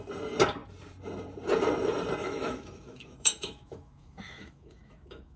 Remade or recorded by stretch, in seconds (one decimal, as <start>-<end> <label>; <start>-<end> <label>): 0.0-2.2 recorded; 2.2-5.4 remade